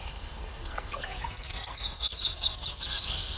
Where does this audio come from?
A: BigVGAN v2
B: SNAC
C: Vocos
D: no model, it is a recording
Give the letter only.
B